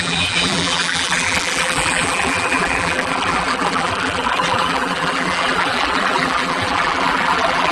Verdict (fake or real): fake